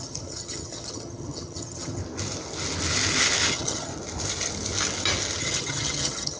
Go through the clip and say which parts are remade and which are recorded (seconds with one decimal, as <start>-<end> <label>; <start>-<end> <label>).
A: 0.0-2.0 remade; 2.0-3.5 recorded; 3.5-3.9 remade; 3.9-5.4 recorded; 5.4-6.4 remade